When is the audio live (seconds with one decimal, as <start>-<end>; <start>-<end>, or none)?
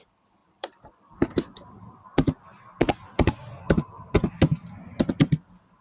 0.0-0.4; 1.7-5.8